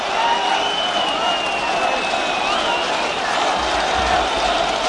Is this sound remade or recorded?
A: recorded